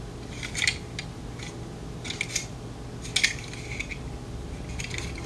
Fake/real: real